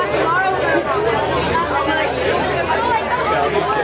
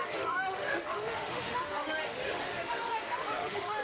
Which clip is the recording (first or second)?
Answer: first